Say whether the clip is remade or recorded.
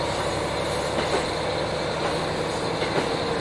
recorded